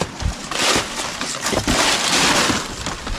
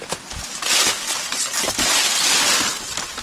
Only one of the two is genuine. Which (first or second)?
second